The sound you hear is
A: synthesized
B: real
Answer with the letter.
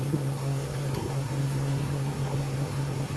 A